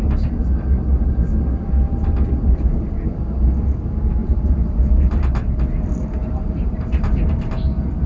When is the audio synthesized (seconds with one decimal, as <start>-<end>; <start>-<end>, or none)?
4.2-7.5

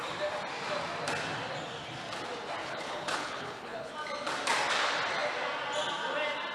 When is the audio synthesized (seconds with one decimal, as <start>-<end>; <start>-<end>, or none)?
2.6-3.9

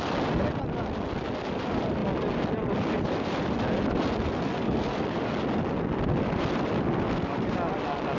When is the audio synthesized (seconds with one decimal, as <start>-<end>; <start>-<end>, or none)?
none